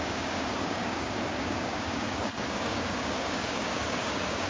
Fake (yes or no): yes